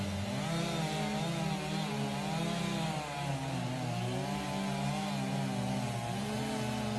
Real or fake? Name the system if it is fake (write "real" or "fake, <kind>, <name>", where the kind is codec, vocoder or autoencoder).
real